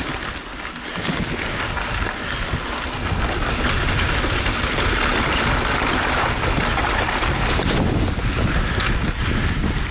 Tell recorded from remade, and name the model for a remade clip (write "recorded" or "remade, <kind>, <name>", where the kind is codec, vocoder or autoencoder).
recorded